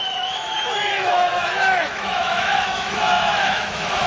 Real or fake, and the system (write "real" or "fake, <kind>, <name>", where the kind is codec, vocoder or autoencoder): fake, autoencoder, DAC-VAE